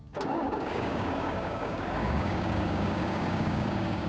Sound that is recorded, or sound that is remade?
remade